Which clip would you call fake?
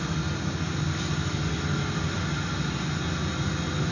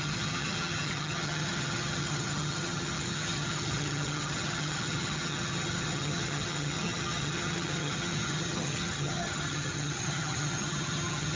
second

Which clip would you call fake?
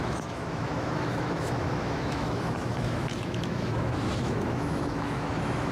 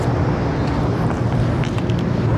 first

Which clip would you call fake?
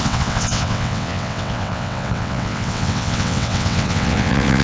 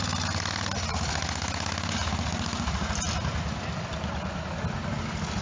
first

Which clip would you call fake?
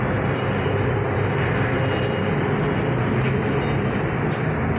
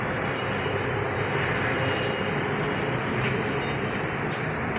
second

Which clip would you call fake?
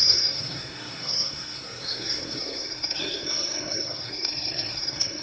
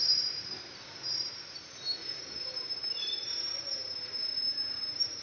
first